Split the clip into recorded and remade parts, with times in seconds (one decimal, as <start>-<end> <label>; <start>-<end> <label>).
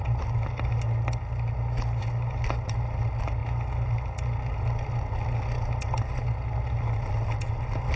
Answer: 0.0-8.0 recorded